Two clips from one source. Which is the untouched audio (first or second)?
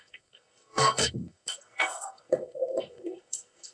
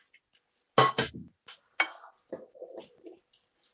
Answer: second